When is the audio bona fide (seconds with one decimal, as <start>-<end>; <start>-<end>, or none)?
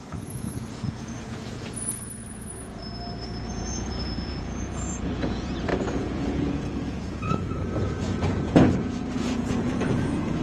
2.8-3.4